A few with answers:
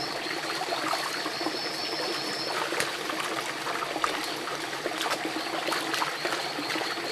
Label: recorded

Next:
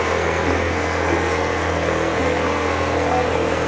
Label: remade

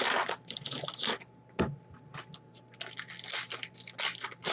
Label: recorded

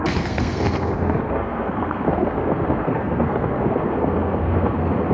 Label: remade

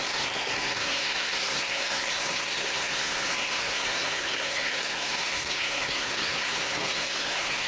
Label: remade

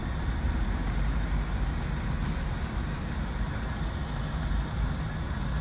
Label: recorded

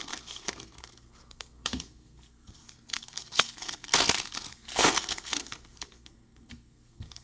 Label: remade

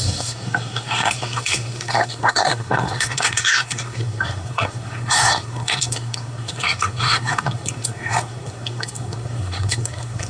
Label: remade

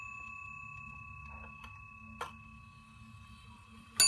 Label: recorded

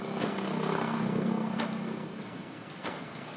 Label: remade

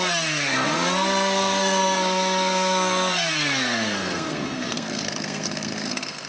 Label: remade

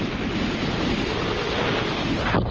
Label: recorded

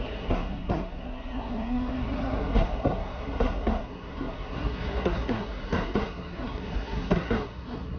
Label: remade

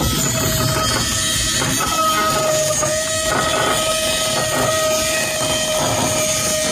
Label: recorded